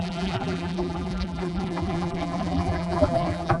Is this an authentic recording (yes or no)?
no